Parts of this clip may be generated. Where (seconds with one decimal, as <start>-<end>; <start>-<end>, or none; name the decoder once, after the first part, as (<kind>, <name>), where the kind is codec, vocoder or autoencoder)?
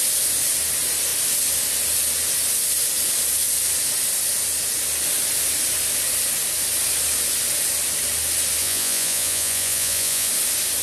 8.6-10.3 (vocoder, Vocos)